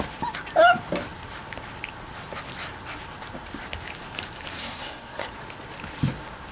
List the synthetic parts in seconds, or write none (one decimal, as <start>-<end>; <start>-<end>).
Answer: 4.6-5.3